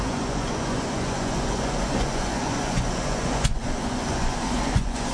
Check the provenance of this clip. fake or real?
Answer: fake